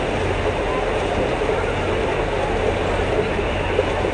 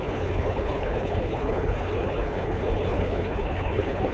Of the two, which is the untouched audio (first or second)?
first